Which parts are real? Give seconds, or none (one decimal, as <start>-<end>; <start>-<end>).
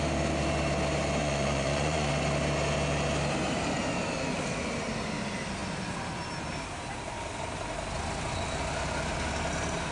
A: 0.0-1.2; 2.1-9.9